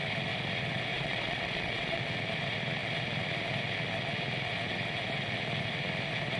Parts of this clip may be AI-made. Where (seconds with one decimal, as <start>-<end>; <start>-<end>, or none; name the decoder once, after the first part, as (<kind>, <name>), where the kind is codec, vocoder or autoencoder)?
0.9-2.0 (vocoder, Vocos)